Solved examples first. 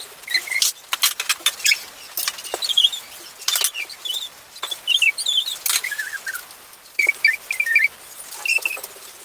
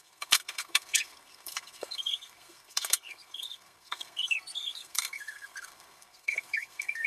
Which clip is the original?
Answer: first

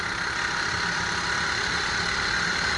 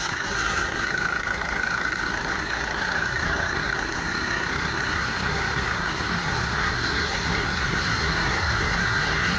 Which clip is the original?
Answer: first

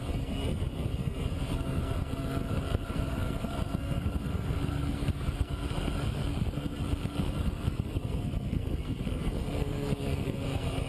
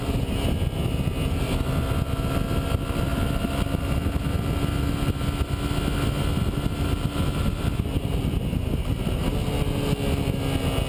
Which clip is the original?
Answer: second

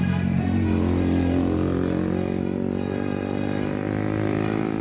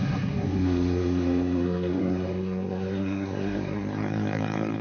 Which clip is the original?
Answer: first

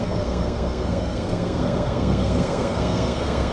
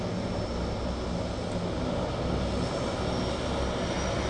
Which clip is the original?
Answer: second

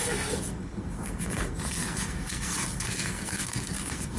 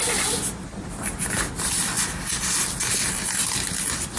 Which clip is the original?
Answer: second